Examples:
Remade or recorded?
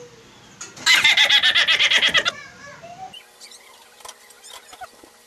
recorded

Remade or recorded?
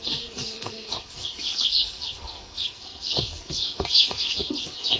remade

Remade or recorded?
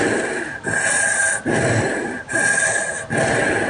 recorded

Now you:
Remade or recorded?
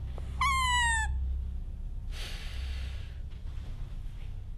recorded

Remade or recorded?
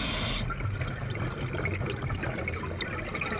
recorded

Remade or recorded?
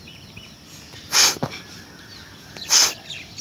recorded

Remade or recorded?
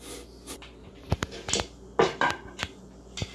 recorded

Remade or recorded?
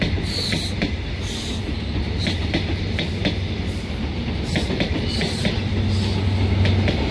recorded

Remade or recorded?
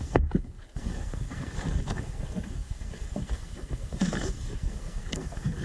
remade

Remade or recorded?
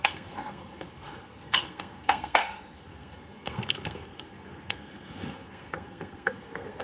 remade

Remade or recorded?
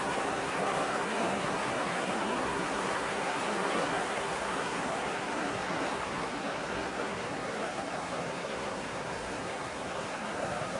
remade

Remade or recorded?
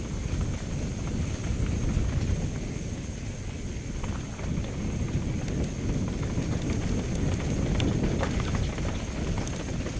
recorded